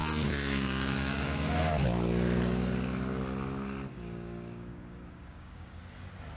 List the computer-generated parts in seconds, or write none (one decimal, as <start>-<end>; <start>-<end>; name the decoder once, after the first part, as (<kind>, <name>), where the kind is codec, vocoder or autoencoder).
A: 0.0-1.7 (codec, DAC); 3.9-5.8